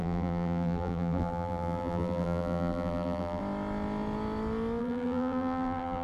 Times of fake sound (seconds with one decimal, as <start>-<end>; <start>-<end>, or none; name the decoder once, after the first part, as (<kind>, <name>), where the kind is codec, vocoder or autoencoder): 0.0-3.4 (vocoder, BigVGAN v2); 4.8-6.0